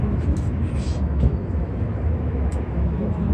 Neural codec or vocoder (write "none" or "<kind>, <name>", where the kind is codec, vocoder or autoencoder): autoencoder, DAC-VAE